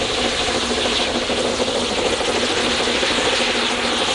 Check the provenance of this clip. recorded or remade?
recorded